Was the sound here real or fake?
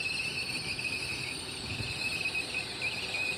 real